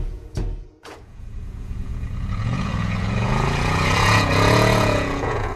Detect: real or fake fake